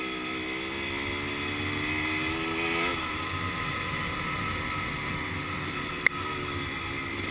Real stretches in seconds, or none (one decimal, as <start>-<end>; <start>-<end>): 0.0-7.3